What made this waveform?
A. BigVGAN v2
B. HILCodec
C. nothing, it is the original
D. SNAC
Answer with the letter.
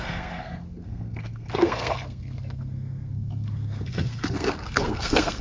D